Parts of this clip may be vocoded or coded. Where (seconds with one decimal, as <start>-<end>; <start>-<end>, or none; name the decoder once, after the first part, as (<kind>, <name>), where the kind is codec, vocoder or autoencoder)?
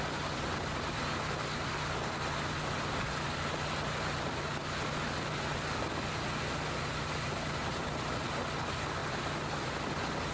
none